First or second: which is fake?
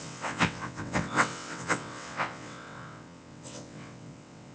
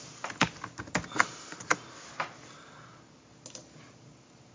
first